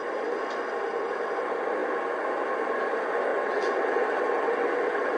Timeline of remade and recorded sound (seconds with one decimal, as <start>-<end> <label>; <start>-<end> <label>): 0.0-3.3 recorded; 3.3-5.2 remade

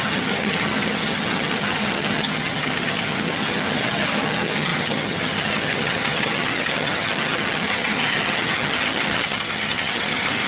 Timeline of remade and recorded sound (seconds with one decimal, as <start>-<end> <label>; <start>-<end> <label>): 0.0-10.5 remade

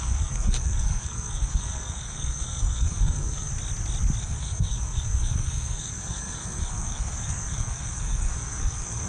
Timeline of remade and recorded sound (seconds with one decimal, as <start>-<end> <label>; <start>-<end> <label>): 0.0-3.5 remade; 3.5-4.2 recorded; 4.2-9.1 remade

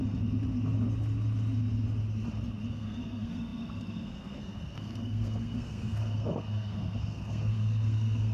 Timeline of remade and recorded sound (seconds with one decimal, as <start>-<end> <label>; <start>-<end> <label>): 0.0-2.7 recorded; 2.7-8.3 remade

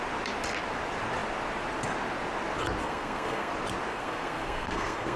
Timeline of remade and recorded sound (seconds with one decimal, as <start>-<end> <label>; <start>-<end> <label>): 0.0-2.8 recorded; 2.8-3.5 remade; 3.5-3.9 recorded; 3.9-5.2 remade

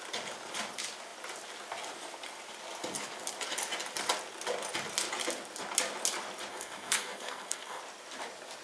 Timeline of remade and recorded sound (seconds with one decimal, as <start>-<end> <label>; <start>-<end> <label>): 0.0-6.5 recorded; 6.5-7.8 remade; 7.8-8.6 recorded

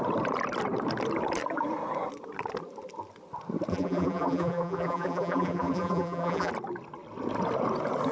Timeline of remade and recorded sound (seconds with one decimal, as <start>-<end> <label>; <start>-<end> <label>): 0.0-3.7 recorded; 3.7-6.5 remade; 6.5-8.1 recorded

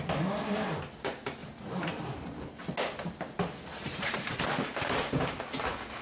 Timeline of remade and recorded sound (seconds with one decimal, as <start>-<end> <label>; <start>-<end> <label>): 0.0-1.4 recorded; 1.4-2.6 remade; 2.6-3.7 recorded; 3.7-4.4 remade; 4.4-6.0 recorded